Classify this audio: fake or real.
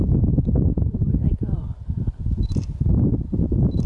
fake